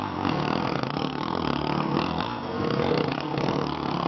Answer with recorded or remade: remade